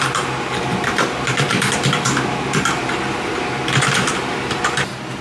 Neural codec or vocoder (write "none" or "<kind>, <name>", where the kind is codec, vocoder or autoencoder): vocoder, BigVGAN v2